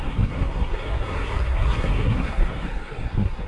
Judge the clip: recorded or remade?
remade